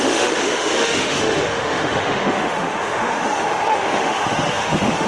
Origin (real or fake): fake